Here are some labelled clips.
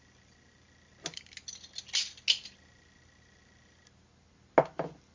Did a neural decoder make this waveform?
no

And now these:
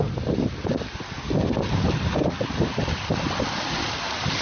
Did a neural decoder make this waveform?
no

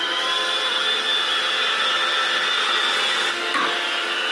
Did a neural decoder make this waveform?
no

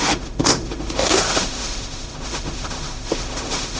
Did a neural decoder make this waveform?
yes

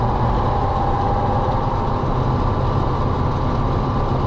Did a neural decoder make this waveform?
no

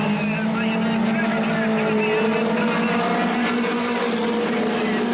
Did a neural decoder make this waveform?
no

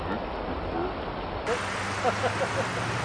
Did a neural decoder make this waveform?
no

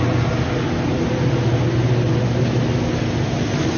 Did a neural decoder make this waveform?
no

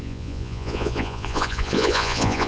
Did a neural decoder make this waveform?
yes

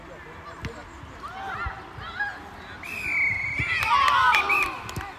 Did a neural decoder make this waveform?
no